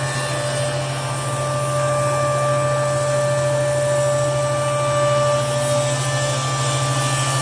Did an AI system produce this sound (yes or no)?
no